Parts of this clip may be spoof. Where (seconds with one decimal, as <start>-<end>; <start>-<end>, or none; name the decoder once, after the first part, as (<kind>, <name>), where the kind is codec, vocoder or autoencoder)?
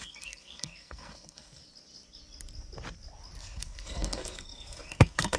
0.0-1.6 (codec, SNAC); 3.4-5.4